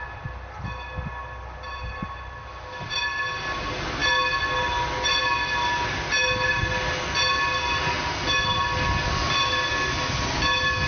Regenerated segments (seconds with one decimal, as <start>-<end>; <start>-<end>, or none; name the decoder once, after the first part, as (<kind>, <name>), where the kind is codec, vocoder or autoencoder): none